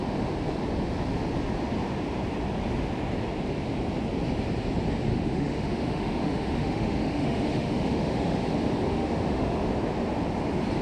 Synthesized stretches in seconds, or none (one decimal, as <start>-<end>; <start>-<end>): 5.1-8.4; 8.9-9.7